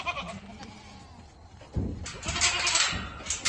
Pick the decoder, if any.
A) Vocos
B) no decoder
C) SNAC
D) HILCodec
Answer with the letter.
B